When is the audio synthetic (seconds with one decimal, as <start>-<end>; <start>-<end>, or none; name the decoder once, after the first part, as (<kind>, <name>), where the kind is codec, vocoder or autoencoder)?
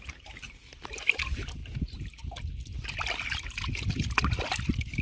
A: none